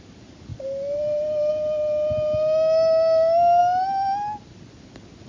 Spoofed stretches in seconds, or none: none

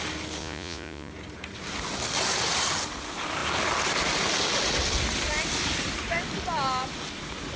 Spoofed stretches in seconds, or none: 0.4-1.1 (vocoder, Vocos)

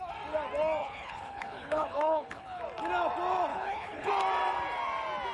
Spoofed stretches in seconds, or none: 0.8-2.6 (codec, HILCodec); 3.5-4.1

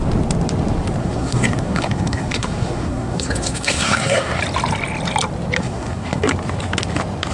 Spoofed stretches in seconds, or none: 1.0-4.4 (codec, SNAC); 5.6-6.2